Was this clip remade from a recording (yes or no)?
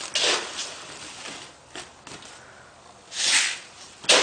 no